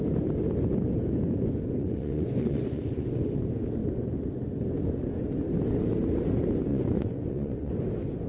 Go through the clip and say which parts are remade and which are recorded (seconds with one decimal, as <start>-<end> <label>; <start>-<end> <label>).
0.0-1.8 recorded; 1.8-3.2 remade; 3.2-6.7 recorded; 6.7-7.7 remade; 7.7-8.3 recorded